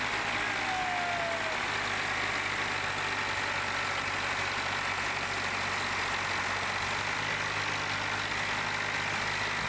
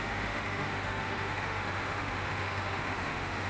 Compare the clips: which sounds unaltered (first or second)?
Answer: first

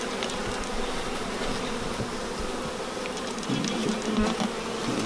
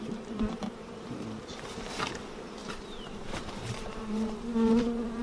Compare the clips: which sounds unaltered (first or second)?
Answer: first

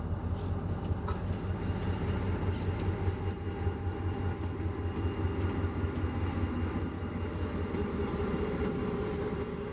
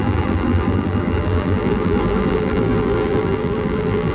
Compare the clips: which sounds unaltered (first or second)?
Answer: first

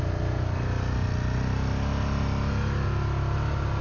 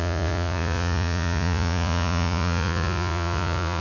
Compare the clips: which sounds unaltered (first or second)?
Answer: first